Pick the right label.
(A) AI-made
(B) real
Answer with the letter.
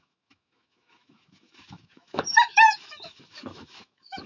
A